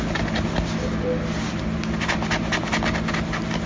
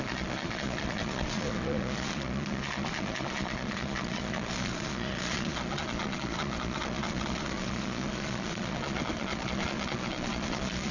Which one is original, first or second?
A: first